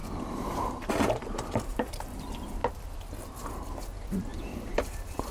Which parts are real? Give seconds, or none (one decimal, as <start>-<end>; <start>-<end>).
2.6-3.5